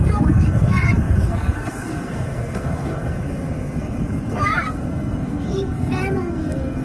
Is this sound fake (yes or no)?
yes